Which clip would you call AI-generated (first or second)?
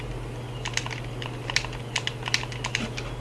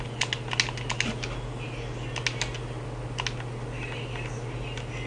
first